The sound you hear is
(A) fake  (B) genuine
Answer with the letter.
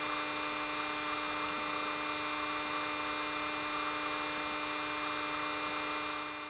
B